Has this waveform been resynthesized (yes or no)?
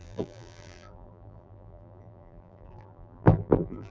yes